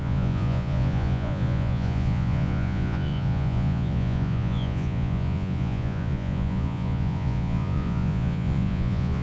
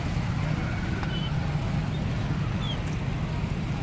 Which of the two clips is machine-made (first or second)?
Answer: first